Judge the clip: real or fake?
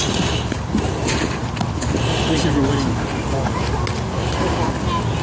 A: real